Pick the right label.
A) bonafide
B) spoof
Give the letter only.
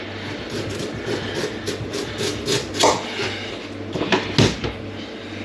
A